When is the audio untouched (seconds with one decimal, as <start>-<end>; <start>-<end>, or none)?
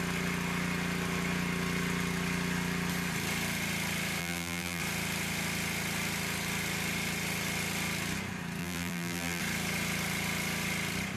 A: 0.0-4.2; 4.8-8.6; 9.4-11.2